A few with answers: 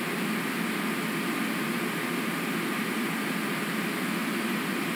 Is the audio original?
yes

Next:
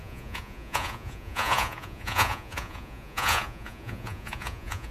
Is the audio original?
no